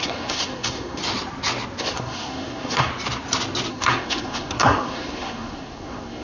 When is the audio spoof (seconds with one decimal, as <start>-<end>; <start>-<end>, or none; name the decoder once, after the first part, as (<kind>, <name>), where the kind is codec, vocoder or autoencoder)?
0.0-1.0 (codec, SNAC); 1.8-2.9; 3.7-6.2